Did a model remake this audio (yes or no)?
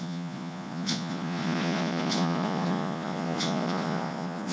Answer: yes